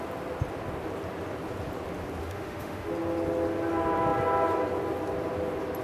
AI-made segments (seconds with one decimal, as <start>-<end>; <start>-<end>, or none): 2.2-2.9